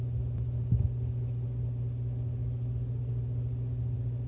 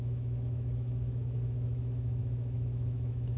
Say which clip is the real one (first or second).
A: first